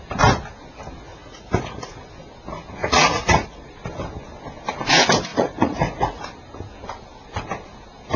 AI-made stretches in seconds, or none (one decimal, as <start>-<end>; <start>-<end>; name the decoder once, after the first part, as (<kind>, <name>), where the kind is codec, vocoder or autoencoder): 1.1-2.0 (vocoder, Vocos); 2.8-3.7; 5.3-6.2